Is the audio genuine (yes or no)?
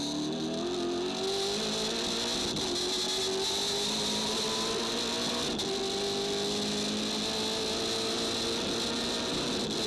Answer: yes